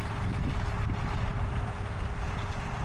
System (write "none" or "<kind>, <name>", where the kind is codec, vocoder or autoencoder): none